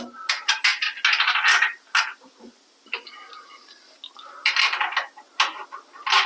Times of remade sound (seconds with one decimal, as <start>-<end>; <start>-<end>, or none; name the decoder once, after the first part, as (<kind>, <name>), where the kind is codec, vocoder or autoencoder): none